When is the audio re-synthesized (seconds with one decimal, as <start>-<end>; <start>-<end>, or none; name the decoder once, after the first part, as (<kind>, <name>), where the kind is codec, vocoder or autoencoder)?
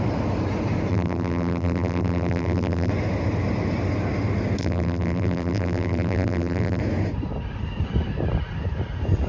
0.9-2.9 (vocoder, BigVGAN v2); 4.6-6.8